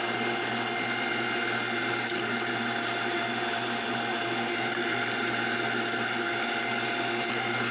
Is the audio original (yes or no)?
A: yes